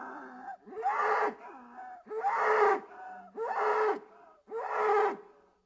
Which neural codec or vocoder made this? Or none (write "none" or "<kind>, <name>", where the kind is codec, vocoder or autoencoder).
none